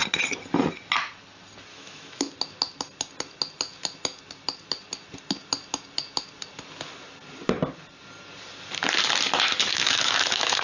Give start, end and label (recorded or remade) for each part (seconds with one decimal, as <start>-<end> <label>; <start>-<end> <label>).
0.0-1.7 recorded; 1.7-2.3 remade; 2.3-9.7 recorded; 9.7-10.6 remade